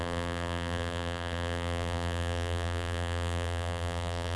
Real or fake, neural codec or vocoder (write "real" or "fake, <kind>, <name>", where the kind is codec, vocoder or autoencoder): fake, vocoder, BigVGAN v2